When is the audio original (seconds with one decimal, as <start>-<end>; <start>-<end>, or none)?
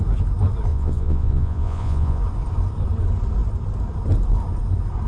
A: 0.0-0.7; 2.2-5.1